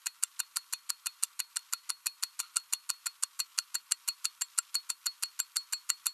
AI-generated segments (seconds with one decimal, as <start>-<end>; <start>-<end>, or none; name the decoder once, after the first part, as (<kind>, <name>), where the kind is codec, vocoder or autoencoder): none